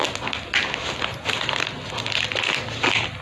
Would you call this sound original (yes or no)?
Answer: yes